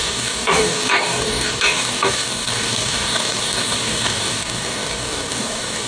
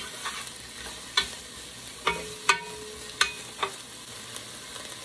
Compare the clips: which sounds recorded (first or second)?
second